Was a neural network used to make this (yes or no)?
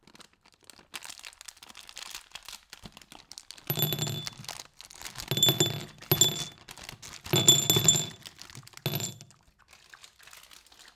no